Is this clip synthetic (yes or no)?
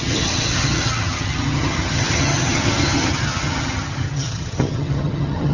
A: yes